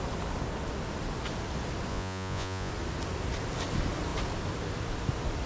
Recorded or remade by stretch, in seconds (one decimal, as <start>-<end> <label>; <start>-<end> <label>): 0.0-1.9 recorded; 1.9-2.7 remade; 2.7-5.5 recorded